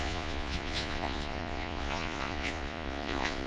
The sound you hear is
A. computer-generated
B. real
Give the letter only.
A